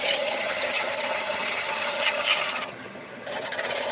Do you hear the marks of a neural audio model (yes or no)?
yes